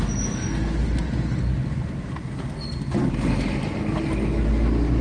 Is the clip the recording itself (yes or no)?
yes